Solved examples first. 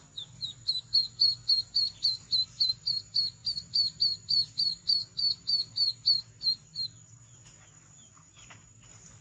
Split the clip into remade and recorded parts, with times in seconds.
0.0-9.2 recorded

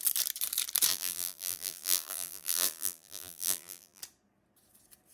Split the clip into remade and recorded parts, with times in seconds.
0.0-0.9 recorded; 0.9-4.0 remade; 4.0-5.1 recorded

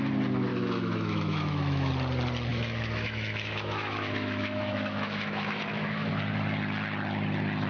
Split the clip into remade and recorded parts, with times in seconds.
0.0-0.5 recorded; 0.5-1.9 remade; 1.9-2.5 recorded; 2.5-6.1 remade; 6.1-7.7 recorded

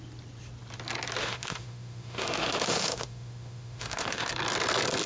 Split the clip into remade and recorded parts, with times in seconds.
0.0-1.2 recorded; 1.2-4.3 remade; 4.3-5.1 recorded

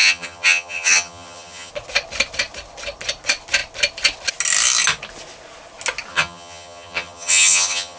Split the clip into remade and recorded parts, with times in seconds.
0.0-1.7 remade; 1.7-6.1 recorded; 6.1-8.0 remade